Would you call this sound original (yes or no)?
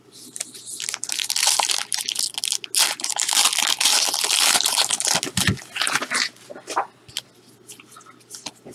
yes